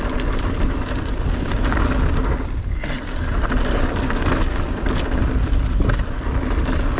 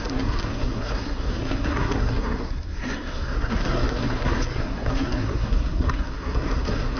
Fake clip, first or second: second